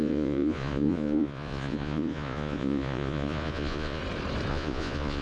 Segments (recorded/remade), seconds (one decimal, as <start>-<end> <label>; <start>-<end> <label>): 0.0-4.0 remade; 4.0-4.5 recorded; 4.5-5.2 remade